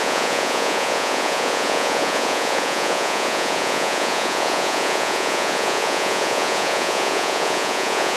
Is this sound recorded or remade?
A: remade